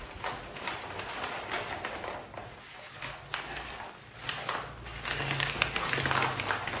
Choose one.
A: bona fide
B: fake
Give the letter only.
A